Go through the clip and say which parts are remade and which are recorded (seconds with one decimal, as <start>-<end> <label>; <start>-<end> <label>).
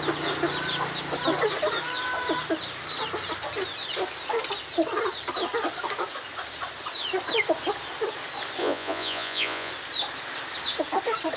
0.0-8.6 recorded; 8.6-9.7 remade; 9.7-11.4 recorded